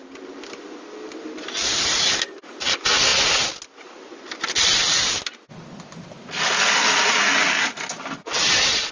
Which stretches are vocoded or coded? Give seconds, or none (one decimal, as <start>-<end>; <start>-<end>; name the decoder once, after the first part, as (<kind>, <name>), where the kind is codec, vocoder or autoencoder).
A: none